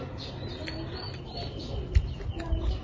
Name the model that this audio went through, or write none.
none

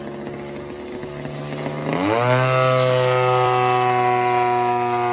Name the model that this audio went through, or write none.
none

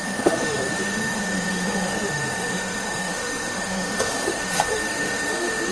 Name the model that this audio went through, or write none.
autoencoder, DAC-VAE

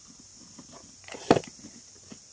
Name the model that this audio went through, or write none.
none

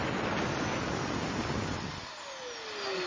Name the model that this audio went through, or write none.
none